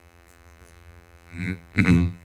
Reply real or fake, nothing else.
fake